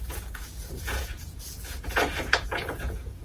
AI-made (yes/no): yes